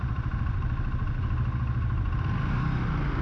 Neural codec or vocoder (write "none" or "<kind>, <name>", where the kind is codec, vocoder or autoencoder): none